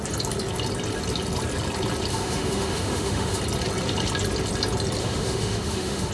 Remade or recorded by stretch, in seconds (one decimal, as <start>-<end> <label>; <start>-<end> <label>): 0.0-2.1 recorded; 2.1-3.4 remade; 3.4-5.0 recorded; 5.0-6.1 remade